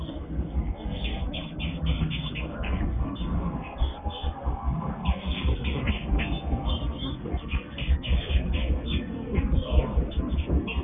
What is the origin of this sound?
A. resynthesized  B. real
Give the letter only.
A